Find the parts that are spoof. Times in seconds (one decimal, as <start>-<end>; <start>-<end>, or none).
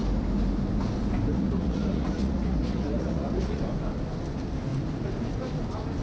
1.3-3.6